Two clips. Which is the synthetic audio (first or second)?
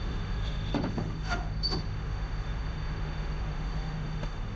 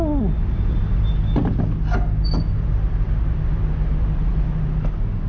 first